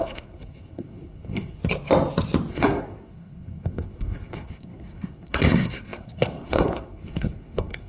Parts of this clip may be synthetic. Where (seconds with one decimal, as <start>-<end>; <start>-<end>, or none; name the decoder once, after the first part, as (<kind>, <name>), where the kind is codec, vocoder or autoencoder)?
0.0-1.6 (codec, SNAC); 2.5-7.9